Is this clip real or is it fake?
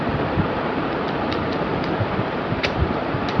fake